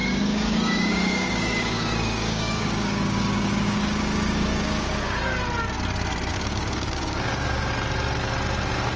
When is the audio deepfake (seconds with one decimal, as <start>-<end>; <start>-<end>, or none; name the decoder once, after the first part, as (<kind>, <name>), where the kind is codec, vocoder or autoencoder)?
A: 0.0-5.2 (codec, DAC); 6.3-7.7